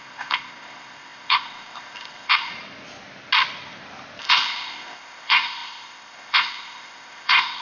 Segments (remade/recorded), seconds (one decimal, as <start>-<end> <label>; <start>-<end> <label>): 0.0-2.5 remade; 2.5-4.2 recorded; 4.2-7.6 remade